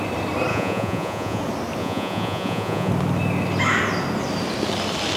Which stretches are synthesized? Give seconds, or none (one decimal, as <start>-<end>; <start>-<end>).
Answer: 0.5-1.4; 1.8-2.9